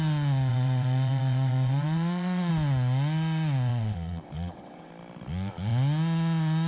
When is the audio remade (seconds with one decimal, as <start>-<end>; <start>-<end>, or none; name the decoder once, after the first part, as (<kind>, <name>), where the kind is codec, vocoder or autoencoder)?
0.5-2.5 (vocoder, WaveNeXt); 3.7-4.9